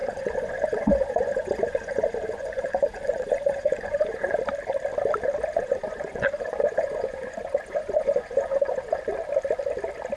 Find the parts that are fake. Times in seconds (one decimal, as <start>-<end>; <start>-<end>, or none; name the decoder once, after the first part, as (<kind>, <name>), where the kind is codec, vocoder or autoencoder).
0.0-4.4 (vocoder, Vocos); 5.5-9.0